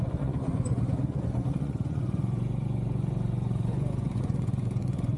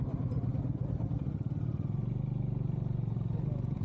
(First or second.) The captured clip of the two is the second